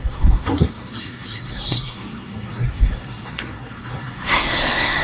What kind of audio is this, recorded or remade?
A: remade